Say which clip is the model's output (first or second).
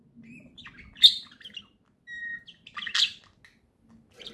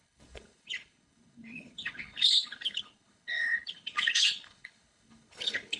second